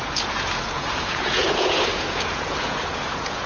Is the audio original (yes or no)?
no